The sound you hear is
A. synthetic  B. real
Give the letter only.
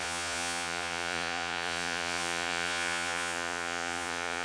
A